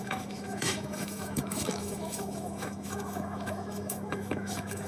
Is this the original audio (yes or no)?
no